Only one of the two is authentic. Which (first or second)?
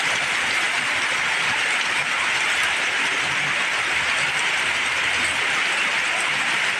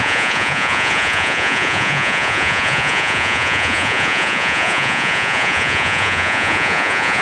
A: first